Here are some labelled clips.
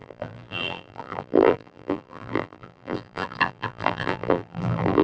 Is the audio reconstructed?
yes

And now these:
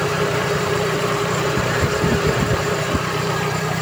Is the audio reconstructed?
yes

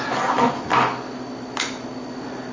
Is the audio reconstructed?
no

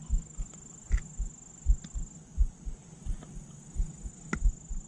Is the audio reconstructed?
no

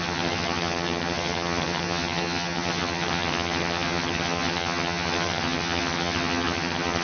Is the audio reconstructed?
yes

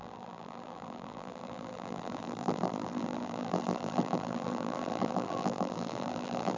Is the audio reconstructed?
yes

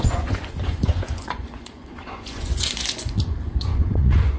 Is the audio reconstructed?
yes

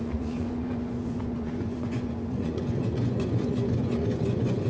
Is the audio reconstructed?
yes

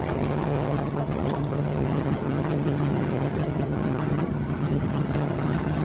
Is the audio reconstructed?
yes